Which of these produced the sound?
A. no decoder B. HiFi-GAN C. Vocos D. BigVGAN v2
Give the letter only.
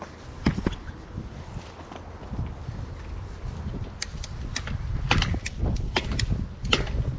A